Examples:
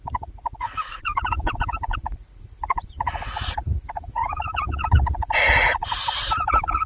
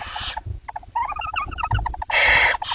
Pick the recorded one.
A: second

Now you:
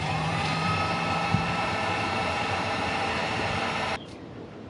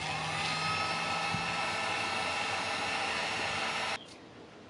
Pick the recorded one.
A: second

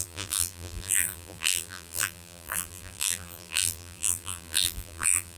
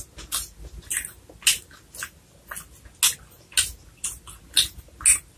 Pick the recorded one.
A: second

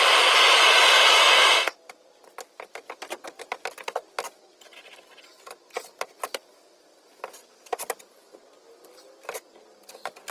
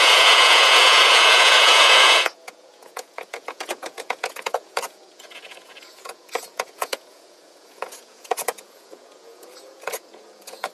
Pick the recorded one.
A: first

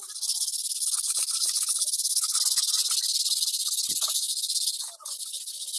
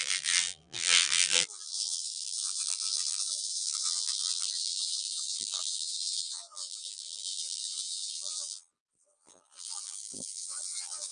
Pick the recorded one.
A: first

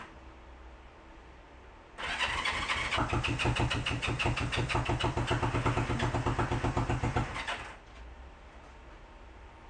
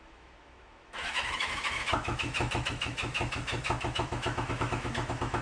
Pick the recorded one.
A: first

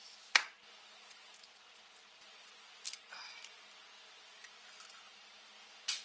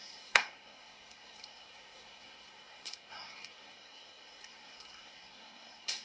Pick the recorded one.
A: first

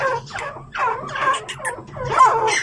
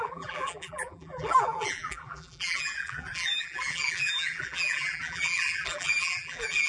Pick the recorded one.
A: first